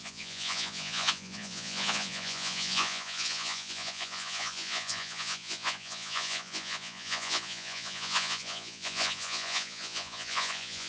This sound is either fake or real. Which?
fake